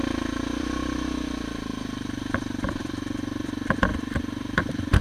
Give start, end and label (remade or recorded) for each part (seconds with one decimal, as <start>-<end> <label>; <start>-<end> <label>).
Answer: 0.0-5.0 remade